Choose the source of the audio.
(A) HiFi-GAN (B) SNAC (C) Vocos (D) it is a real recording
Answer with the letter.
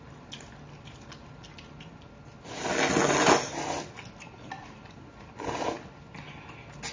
D